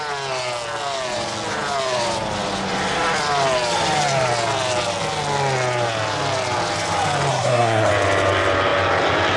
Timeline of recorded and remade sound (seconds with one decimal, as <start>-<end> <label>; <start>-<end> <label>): 0.0-7.3 recorded; 7.3-7.9 remade; 7.9-9.4 recorded